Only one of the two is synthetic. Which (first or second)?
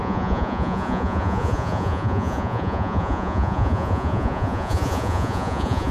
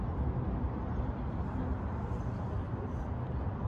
first